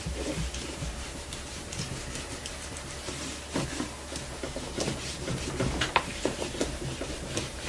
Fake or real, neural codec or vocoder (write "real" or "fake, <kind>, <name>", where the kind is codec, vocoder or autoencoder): fake, vocoder, BigVGAN v2